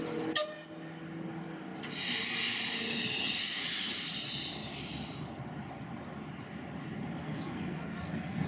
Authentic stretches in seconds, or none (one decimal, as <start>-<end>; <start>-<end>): 0.0-7.2